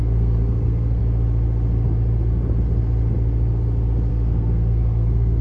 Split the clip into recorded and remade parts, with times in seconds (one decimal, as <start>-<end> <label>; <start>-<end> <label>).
0.0-1.0 remade; 1.0-4.1 recorded; 4.1-5.4 remade